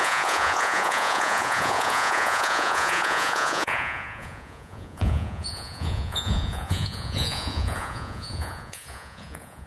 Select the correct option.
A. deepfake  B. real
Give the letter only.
A